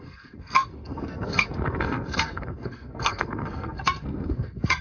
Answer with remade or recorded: remade